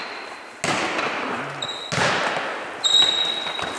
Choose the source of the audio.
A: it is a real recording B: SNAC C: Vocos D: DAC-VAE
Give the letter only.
A